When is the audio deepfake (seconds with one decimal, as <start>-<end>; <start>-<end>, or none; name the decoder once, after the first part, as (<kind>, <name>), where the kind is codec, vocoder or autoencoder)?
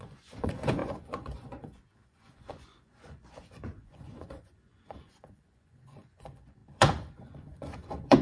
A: 0.0-8.2 (vocoder, Vocos)